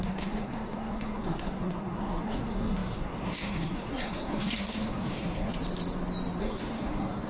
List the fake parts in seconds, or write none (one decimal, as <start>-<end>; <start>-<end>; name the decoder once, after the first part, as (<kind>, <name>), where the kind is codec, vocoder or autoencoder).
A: 0.0-5.5 (codec, SNAC); 6.4-7.3